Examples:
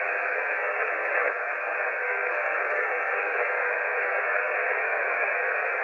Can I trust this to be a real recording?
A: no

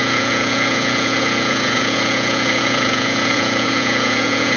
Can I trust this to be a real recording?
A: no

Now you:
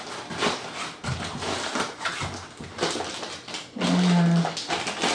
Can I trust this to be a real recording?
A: yes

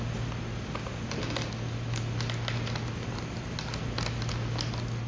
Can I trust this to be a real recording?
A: yes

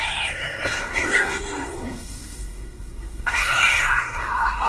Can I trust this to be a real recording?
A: no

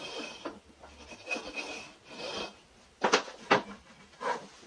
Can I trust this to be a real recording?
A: yes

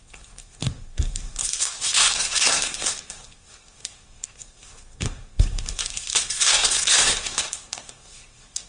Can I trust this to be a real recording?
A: no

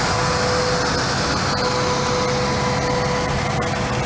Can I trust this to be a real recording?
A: yes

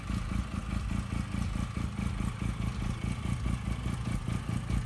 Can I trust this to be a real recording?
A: yes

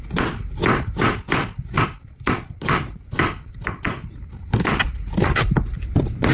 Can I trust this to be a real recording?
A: yes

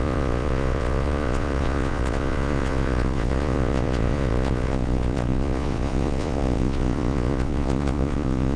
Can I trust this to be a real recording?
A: no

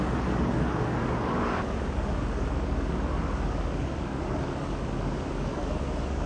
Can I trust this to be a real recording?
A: no